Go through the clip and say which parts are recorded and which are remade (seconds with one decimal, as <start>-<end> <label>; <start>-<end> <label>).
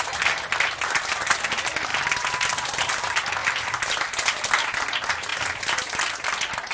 0.0-1.9 recorded; 1.9-2.9 remade; 2.9-3.4 recorded; 3.4-4.4 remade; 4.4-5.3 recorded; 5.3-6.7 remade